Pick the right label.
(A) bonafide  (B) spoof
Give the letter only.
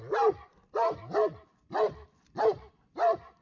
A